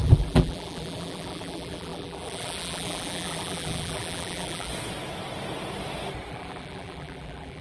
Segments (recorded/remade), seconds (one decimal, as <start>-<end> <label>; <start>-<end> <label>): 0.0-4.7 remade; 4.7-6.3 recorded; 6.3-7.6 remade